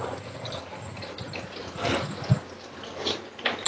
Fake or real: real